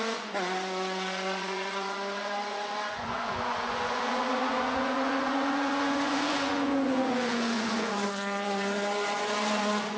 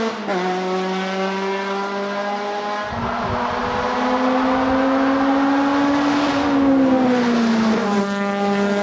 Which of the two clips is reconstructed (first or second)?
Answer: first